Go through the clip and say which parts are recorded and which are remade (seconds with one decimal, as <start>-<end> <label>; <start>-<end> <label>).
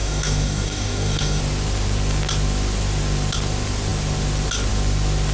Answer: 0.0-1.4 remade; 1.4-5.3 recorded